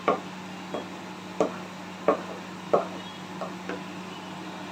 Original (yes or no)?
yes